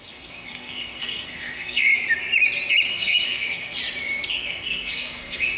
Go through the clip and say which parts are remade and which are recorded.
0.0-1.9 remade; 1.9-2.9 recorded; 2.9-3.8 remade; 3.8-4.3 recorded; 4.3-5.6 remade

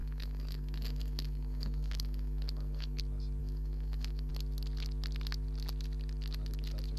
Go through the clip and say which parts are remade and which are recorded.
0.0-3.0 remade; 3.0-3.4 recorded; 3.4-4.3 remade; 4.3-7.0 recorded

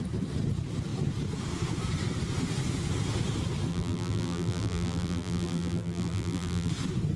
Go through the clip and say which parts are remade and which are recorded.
0.0-3.7 recorded; 3.7-6.7 remade; 6.7-7.2 recorded

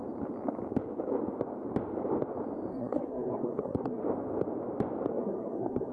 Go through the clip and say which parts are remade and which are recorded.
0.0-2.7 recorded; 2.7-4.0 remade; 4.0-5.1 recorded; 5.1-5.9 remade

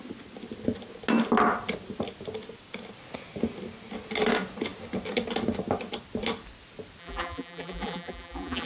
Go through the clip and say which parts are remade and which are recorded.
0.0-7.0 recorded; 7.0-8.7 remade

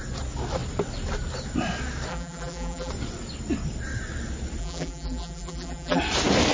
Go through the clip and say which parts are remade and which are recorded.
0.0-2.1 recorded; 2.1-2.9 remade; 2.9-4.6 recorded; 4.6-6.0 remade; 6.0-6.5 recorded

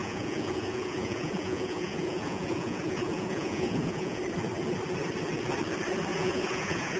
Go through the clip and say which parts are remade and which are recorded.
0.0-4.2 remade; 4.2-6.1 recorded; 6.1-7.0 remade

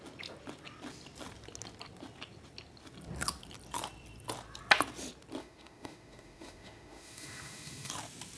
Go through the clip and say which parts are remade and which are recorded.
0.0-5.4 recorded; 5.4-7.9 remade; 7.9-8.4 recorded